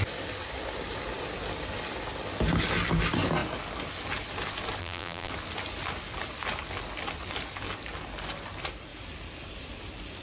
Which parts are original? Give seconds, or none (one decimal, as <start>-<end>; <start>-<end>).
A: 0.0-4.8; 5.3-10.2